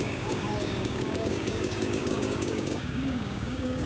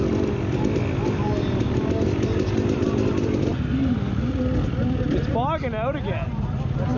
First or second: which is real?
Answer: second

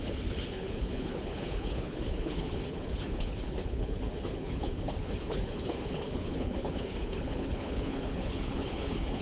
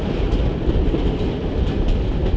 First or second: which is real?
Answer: second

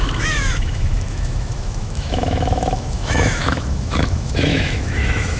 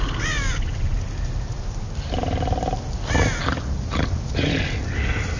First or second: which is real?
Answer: second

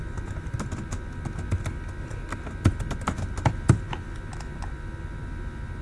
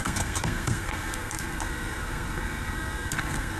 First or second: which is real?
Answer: first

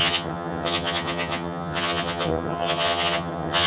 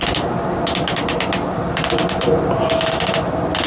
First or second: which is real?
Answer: second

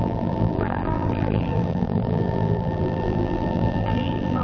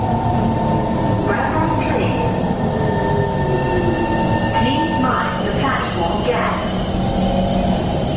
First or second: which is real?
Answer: second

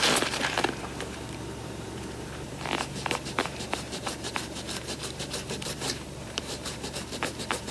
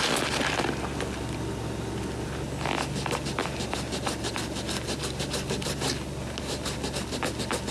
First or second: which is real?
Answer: second